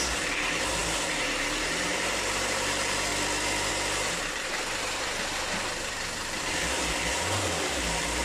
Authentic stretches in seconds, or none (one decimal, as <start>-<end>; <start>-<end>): 3.1-3.7